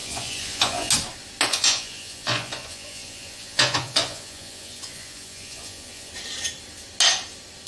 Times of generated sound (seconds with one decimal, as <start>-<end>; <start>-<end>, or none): 0.0-0.9; 1.5-6.1